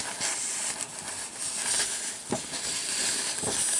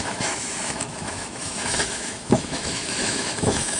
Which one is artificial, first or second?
second